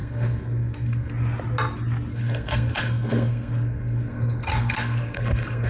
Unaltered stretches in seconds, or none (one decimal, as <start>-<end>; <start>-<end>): 1.1-2.1